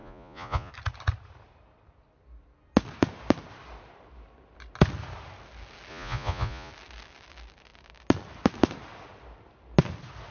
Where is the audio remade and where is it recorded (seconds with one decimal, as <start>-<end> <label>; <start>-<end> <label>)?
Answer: 0.0-0.7 remade; 0.7-5.9 recorded; 5.9-6.7 remade; 6.7-10.3 recorded